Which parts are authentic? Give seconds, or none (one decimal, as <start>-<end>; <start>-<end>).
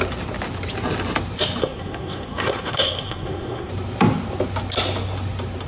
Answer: 0.0-1.6; 3.7-5.7